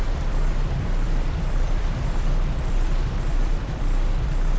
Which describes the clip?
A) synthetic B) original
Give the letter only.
A